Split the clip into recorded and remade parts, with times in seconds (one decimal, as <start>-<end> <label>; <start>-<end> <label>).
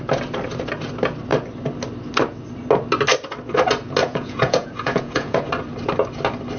0.0-4.0 recorded; 4.0-5.5 remade; 5.5-6.6 recorded